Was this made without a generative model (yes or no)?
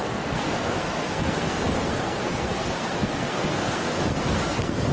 no